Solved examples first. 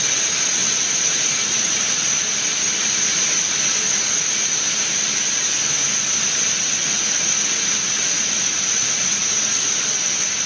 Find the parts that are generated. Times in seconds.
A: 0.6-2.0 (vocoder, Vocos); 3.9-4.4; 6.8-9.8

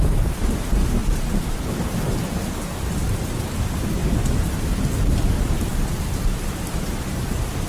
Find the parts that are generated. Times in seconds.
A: 1.0-1.7 (vocoder, BigVGAN v2); 4.0-4.7; 5.7-6.5

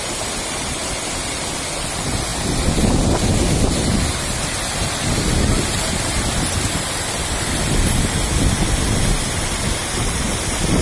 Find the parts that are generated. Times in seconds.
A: none

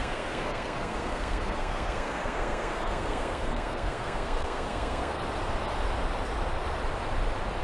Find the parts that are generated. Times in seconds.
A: 0.0-5.2 (codec, SNAC)

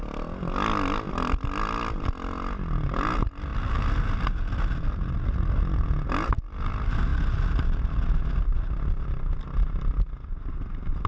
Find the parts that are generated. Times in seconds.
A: none

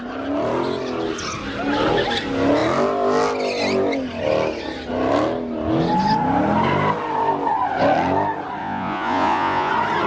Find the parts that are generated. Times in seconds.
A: 8.6-9.7 (vocoder, Vocos)